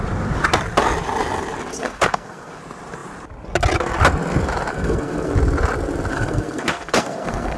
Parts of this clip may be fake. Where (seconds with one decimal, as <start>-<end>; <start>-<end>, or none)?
1.7-2.6; 4.7-5.3; 6.1-7.6